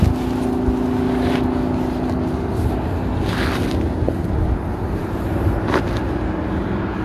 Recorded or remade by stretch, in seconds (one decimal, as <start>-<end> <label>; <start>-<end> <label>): 0.0-7.0 recorded